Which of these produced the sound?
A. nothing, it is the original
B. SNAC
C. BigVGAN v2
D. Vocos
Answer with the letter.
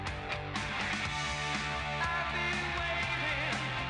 A